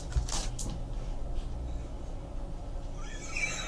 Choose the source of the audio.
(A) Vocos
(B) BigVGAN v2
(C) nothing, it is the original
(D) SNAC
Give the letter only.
C